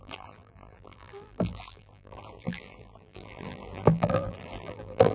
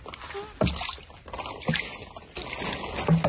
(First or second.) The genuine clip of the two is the second